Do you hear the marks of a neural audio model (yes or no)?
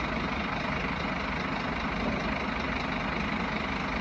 no